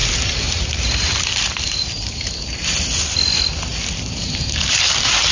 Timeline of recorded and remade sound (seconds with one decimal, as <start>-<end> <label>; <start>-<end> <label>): 0.0-2.3 remade; 2.3-3.7 recorded; 3.7-4.7 remade; 4.7-5.3 recorded